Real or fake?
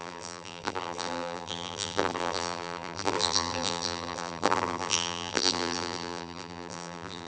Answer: fake